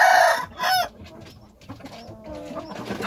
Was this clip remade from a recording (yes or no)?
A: no